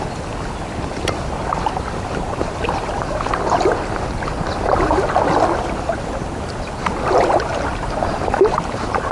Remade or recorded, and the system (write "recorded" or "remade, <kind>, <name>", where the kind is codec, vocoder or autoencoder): recorded